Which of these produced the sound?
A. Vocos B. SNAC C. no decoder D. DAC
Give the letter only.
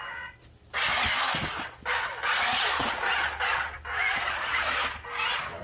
C